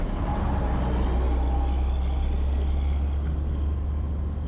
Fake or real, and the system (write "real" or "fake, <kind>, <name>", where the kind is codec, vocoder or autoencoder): real